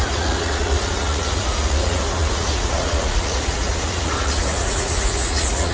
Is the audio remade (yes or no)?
yes